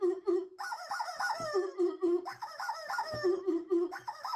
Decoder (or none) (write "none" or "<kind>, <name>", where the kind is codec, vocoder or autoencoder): autoencoder, DAC-VAE